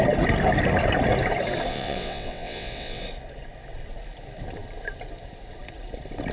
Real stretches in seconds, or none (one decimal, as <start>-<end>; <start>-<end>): 0.0-1.7; 3.0-6.3